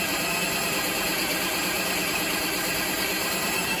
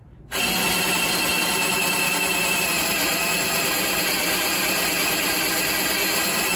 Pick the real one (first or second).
second